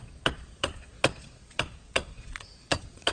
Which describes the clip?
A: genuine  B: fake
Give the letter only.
B